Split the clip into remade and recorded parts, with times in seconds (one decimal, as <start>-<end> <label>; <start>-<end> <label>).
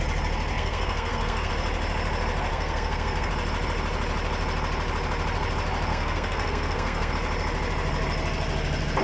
0.0-0.5 recorded; 0.5-1.5 remade; 1.5-2.5 recorded; 2.5-3.3 remade; 3.3-5.9 recorded; 5.9-7.1 remade; 7.1-9.0 recorded